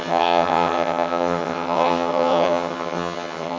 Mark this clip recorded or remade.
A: remade